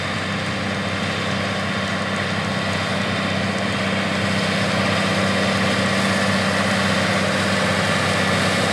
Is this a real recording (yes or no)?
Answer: yes